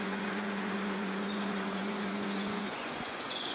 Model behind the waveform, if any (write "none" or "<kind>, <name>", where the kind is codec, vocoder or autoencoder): vocoder, Vocos